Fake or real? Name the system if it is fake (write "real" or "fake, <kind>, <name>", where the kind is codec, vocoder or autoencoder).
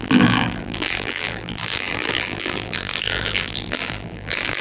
fake, vocoder, BigVGAN v2